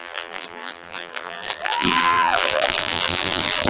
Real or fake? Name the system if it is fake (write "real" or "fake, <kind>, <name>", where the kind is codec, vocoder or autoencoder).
fake, vocoder, BigVGAN v2